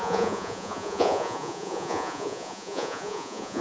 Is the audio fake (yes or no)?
yes